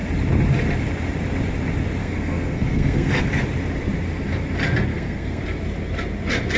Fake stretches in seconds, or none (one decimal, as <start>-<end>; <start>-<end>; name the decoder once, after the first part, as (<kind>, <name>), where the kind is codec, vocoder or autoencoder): 2.0-3.2 (codec, SNAC); 4.9-5.4